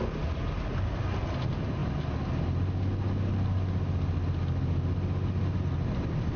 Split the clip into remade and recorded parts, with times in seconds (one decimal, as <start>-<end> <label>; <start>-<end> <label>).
0.0-6.4 recorded